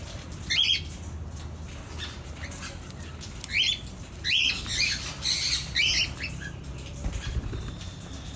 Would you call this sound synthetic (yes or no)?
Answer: no